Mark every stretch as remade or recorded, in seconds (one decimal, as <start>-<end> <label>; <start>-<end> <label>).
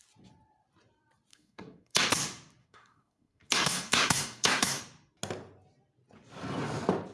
0.0-1.3 recorded; 1.3-2.0 remade; 2.0-2.6 recorded; 2.6-4.8 remade; 4.8-7.1 recorded